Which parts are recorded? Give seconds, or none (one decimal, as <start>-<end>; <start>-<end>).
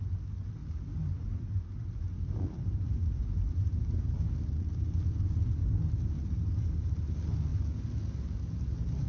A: 0.0-0.6; 4.9-5.6; 6.8-9.1